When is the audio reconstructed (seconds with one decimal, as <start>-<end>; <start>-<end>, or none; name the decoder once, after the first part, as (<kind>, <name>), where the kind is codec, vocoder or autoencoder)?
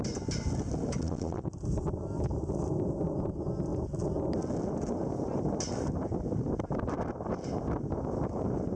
1.0-1.5 (vocoder, Vocos)